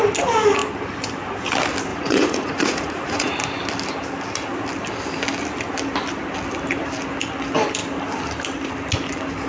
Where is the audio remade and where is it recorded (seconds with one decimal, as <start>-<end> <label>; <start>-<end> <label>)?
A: 0.0-1.9 recorded; 1.9-3.4 remade; 3.4-9.5 recorded